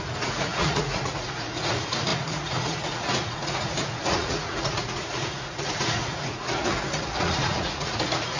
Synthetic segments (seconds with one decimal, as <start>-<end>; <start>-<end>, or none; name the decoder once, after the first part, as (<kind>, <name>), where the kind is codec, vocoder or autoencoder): 0.0-8.4 (vocoder, Vocos)